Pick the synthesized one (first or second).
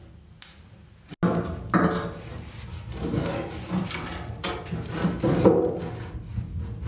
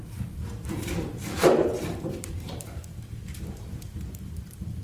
second